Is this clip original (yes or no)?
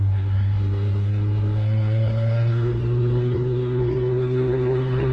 no